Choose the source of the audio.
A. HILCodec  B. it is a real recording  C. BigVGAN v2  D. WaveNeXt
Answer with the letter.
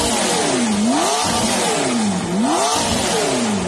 B